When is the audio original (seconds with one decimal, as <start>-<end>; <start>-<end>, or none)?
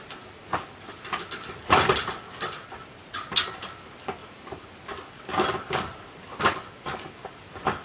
0.0-4.2; 4.7-7.8